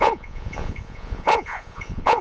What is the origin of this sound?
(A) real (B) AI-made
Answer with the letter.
B